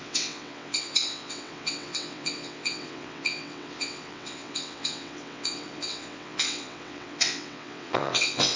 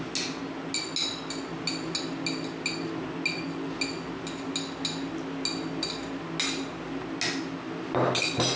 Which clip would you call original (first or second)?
second